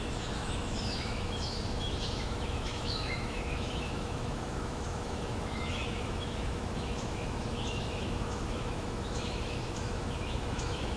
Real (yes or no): no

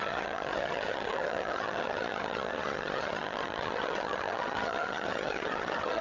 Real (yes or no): no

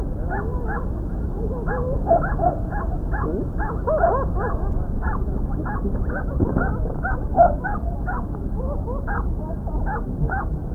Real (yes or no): yes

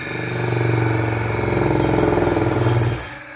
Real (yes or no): yes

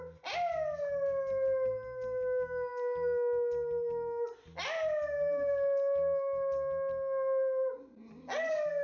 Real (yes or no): yes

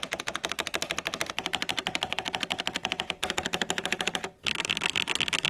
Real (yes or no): yes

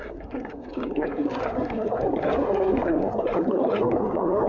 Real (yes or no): no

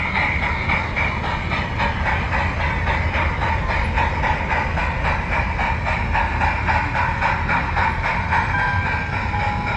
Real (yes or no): yes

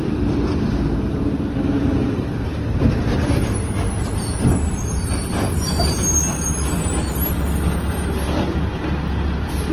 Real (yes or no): yes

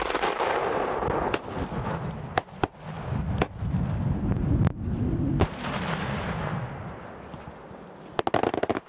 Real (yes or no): yes